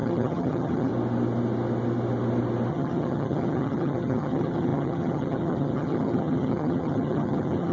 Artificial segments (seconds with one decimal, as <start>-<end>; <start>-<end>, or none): 0.0-0.9; 2.7-7.7